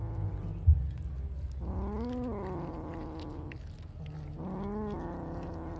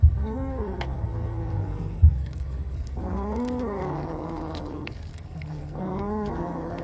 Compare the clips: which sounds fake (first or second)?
second